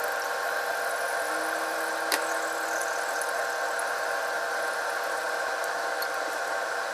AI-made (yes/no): no